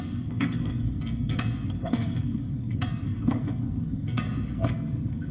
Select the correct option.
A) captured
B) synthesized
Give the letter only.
B